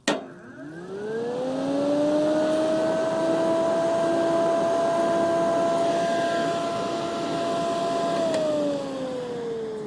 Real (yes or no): yes